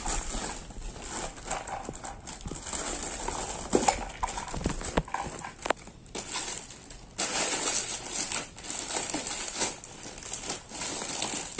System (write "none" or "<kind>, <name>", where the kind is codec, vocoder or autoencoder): none